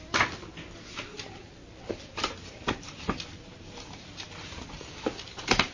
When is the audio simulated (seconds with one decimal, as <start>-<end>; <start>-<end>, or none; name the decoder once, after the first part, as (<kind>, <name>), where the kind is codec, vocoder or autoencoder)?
1.4-4.8 (vocoder, BigVGAN v2)